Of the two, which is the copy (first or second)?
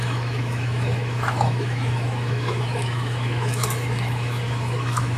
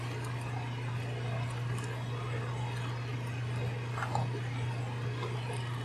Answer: first